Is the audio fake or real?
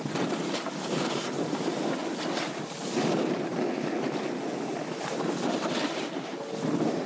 real